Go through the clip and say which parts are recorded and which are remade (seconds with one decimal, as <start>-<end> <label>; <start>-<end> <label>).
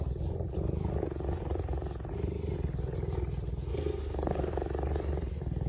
0.0-3.7 recorded; 3.7-4.5 remade; 4.5-5.7 recorded